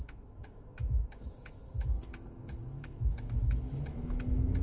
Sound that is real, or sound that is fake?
fake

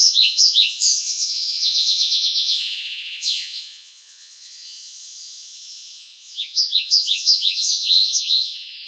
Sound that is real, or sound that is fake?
fake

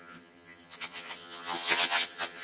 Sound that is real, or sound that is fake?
fake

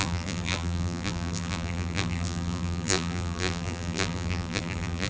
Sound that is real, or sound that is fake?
fake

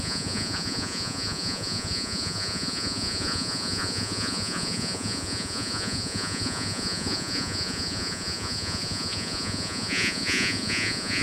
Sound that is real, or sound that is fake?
fake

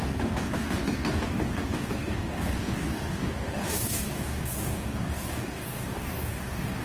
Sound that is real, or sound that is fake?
fake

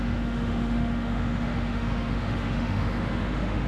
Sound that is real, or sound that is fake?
fake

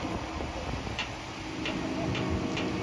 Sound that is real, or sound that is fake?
real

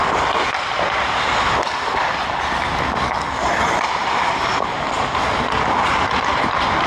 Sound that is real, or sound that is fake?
real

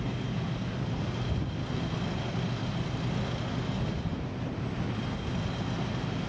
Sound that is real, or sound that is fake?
real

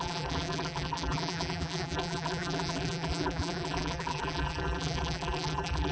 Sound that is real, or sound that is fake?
fake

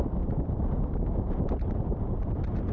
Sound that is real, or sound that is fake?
real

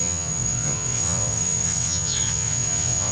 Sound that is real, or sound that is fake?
fake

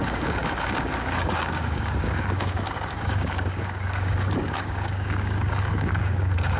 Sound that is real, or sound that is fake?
fake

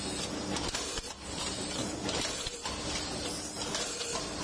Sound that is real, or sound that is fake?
real